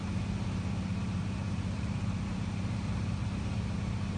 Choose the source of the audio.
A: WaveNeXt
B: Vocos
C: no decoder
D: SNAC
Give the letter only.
C